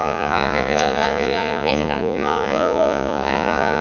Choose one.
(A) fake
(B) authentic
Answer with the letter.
A